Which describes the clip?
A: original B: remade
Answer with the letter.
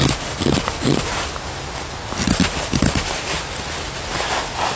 A